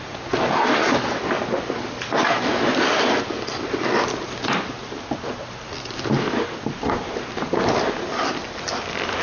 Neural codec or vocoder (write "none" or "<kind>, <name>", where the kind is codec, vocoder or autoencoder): none